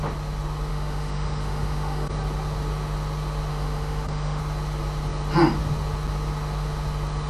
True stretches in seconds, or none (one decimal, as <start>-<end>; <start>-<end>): 0.0-0.7; 2.1-3.5; 4.4-7.3

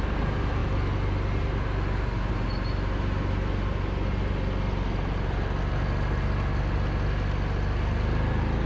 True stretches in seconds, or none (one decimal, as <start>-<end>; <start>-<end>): 0.0-8.7